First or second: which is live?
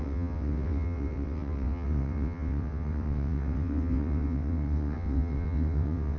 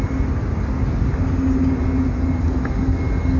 second